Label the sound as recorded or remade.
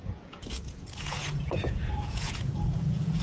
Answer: remade